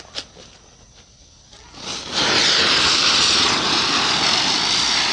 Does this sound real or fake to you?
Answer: real